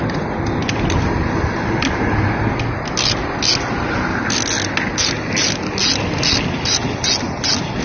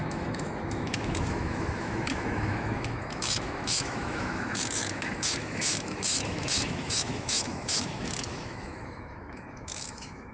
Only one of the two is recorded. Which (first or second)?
first